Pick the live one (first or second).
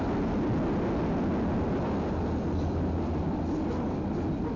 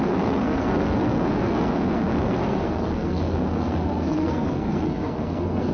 first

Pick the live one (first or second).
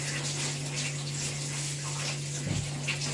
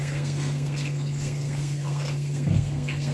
first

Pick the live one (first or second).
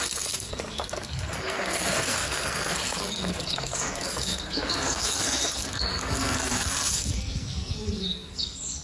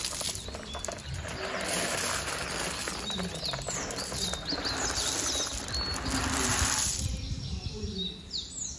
second